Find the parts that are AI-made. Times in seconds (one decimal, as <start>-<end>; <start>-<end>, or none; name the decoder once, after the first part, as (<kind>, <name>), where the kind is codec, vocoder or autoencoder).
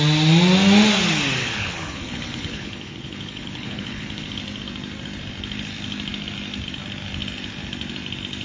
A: 1.4-4.4 (codec, HILCodec)